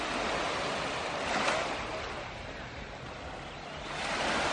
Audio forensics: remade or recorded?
recorded